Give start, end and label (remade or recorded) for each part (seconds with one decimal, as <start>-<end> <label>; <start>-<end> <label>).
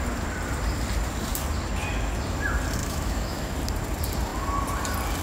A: 0.0-2.8 recorded; 2.8-3.4 remade; 3.4-5.2 recorded